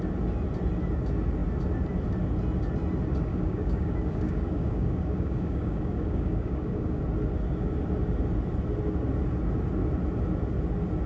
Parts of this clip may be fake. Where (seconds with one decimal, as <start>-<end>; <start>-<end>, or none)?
3.3-7.0